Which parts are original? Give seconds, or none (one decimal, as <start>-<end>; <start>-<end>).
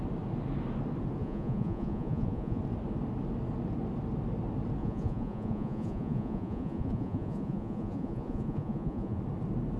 0.0-1.2; 2.6-4.8; 9.2-9.8